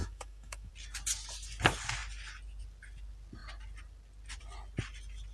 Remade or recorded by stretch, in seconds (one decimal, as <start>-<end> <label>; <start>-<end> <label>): 0.0-0.7 remade; 0.7-5.3 recorded